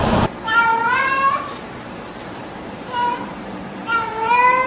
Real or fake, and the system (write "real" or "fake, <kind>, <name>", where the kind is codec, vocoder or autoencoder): fake, vocoder, BigVGAN v2